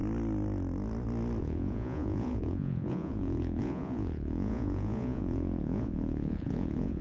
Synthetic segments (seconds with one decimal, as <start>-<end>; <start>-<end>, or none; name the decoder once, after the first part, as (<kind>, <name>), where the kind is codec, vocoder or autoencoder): 1.4-7.0 (vocoder, Vocos)